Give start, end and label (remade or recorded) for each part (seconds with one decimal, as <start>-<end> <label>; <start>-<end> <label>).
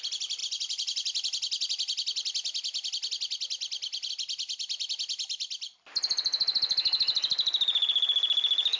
0.0-8.8 recorded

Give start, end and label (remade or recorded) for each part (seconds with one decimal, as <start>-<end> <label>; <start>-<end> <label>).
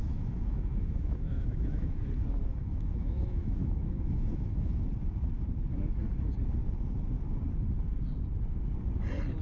0.0-2.0 remade; 2.0-2.5 recorded; 2.5-4.8 remade; 4.8-9.4 recorded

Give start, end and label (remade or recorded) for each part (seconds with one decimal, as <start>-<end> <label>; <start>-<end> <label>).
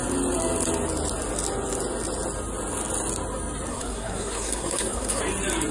0.0-3.7 recorded; 3.7-5.2 remade; 5.2-5.7 recorded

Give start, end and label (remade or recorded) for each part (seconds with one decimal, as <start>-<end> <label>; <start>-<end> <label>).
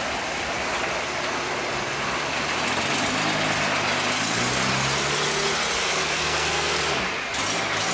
0.0-5.8 recorded; 5.8-6.8 remade; 6.8-7.9 recorded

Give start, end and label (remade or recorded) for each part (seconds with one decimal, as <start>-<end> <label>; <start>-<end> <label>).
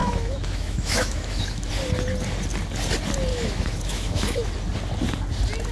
0.0-1.7 remade; 1.7-3.3 recorded; 3.3-4.5 remade; 4.5-5.7 recorded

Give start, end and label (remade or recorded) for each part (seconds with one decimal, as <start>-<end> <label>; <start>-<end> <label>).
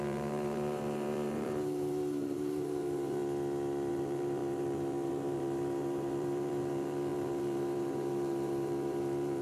0.0-3.2 remade; 3.2-3.9 recorded; 3.9-9.4 remade